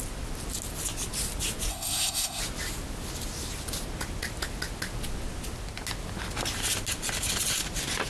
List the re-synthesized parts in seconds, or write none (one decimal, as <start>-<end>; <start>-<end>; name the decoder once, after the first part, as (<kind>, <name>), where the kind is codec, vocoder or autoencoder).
1.7-2.4 (codec, SNAC)